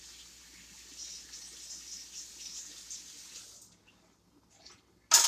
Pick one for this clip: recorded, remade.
recorded